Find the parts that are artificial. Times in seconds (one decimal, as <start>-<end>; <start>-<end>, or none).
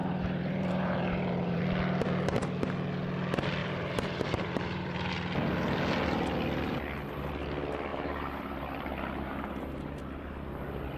0.0-1.6; 3.6-5.1; 7.9-10.0